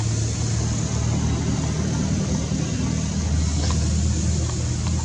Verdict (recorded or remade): recorded